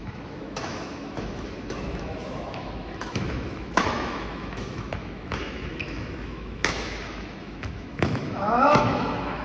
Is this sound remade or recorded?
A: remade